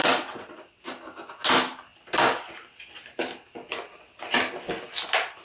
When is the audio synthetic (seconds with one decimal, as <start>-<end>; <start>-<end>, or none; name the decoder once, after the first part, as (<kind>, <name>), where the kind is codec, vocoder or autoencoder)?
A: 0.0-0.8 (vocoder, WaveNeXt)